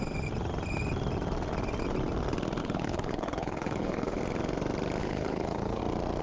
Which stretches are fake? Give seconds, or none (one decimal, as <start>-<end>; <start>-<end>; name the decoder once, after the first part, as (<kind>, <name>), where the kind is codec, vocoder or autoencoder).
2.6-4.2 (codec, HILCodec); 5.0-5.8